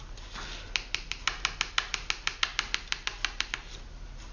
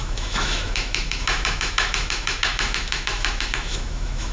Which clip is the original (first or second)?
first